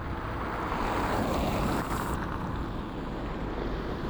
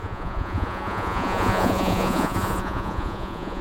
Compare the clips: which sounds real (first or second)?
first